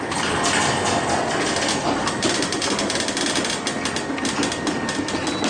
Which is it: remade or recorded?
recorded